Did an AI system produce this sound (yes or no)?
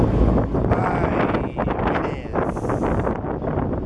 no